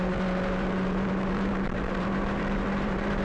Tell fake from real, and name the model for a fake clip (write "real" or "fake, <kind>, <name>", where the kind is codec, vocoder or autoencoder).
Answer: fake, vocoder, BigVGAN v2